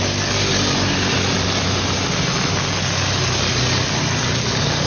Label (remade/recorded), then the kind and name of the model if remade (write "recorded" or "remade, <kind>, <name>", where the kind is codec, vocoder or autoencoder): recorded